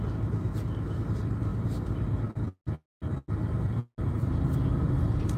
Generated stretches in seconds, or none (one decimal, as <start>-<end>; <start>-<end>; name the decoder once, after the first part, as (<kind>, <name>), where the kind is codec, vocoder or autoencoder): none